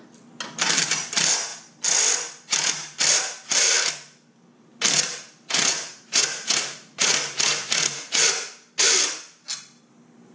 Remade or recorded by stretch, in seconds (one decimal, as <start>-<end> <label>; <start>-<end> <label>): 0.0-5.9 recorded; 5.9-8.2 remade; 8.2-10.3 recorded